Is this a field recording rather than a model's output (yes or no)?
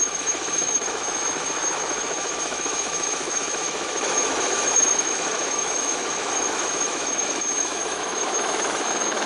no